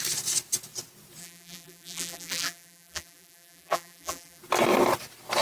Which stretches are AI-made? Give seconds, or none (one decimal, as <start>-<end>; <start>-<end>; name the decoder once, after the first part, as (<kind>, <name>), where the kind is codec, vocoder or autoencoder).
1.2-4.4 (vocoder, BigVGAN v2)